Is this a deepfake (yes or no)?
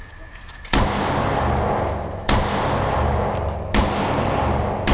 no